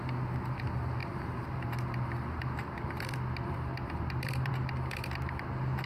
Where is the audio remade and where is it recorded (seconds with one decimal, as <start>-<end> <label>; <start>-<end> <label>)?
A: 0.0-1.0 recorded; 1.0-4.5 remade; 4.5-5.9 recorded